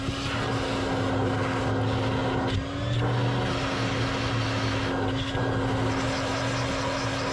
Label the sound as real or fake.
real